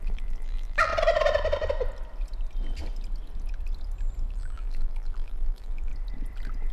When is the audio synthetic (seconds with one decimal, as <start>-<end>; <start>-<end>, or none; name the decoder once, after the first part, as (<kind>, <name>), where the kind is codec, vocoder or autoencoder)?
0.0-0.9 (vocoder, BigVGAN v2); 4.3-5.9